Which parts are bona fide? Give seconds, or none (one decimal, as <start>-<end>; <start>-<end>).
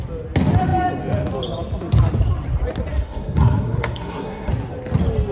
0.0-2.9; 4.5-5.3